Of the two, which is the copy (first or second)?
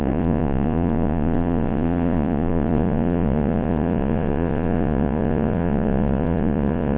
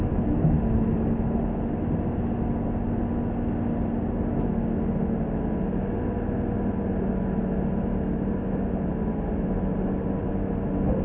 first